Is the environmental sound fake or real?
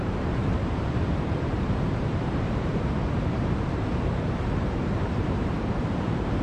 fake